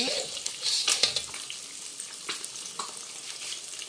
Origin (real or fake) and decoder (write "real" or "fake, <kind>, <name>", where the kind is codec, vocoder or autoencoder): real